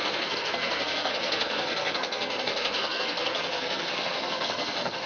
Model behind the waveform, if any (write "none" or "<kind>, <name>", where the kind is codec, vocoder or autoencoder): codec, SNAC